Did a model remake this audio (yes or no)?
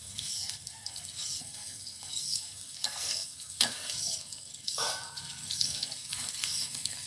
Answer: yes